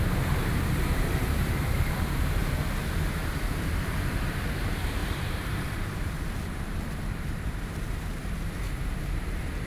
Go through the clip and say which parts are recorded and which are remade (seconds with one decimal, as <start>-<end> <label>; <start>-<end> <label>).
0.0-2.4 remade; 2.4-3.5 recorded; 3.5-9.7 remade